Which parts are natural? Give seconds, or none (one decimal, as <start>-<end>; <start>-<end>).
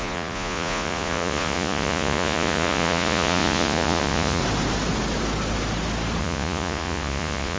4.4-6.2